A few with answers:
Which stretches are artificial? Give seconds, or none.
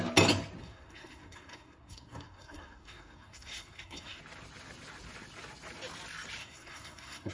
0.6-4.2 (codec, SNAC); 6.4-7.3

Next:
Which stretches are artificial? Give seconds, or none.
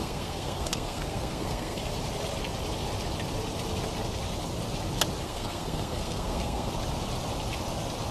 0.0-1.8 (codec, SNAC); 5.2-6.7